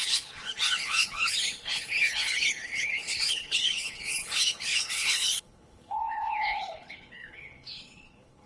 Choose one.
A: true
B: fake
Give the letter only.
B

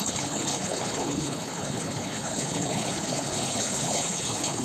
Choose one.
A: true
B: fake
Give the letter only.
B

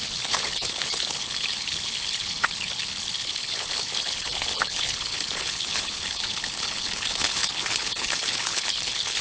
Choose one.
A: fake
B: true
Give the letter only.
A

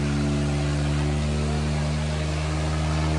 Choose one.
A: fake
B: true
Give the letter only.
B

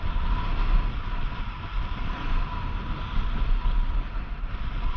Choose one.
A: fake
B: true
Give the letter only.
B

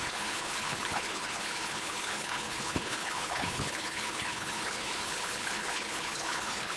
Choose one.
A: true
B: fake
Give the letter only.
B